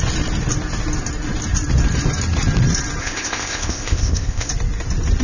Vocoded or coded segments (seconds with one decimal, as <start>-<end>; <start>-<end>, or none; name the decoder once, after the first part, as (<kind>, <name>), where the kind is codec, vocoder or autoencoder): 3.0-4.5 (codec, ZipCodec)